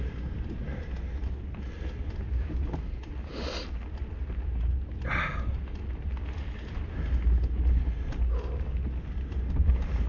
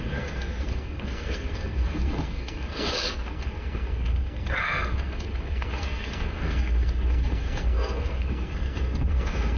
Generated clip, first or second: second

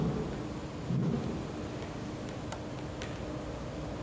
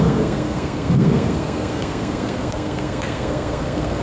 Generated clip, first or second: second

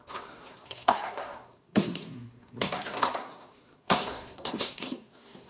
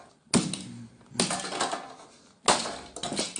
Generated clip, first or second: first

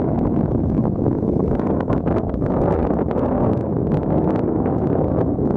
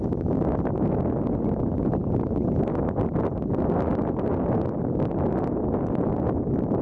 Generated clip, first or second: first